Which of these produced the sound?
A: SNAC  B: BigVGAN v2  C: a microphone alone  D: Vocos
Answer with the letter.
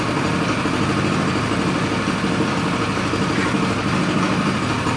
C